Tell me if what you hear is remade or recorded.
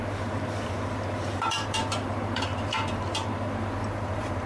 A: remade